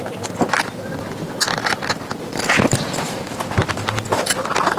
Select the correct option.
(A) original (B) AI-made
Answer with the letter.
A